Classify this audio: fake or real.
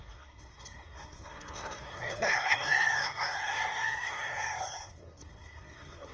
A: fake